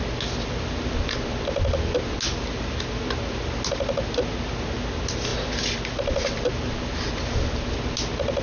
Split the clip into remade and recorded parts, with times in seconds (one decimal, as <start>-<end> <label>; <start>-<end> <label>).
0.0-8.4 recorded